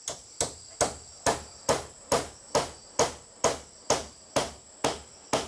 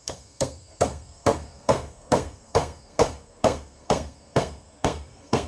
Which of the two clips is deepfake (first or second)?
second